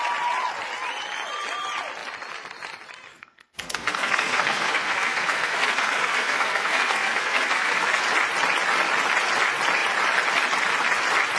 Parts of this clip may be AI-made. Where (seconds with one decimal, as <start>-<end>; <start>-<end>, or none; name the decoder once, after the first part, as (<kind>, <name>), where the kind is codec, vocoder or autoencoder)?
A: 3.1-8.0 (codec, SNAC)